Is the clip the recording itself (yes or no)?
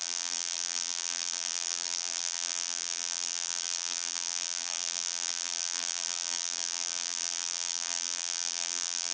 no